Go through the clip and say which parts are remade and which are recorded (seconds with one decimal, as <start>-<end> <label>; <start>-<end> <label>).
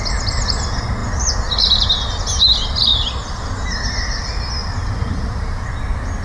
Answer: 0.0-2.9 recorded; 2.9-3.4 remade; 3.4-4.6 recorded; 4.6-5.7 remade; 5.7-6.2 recorded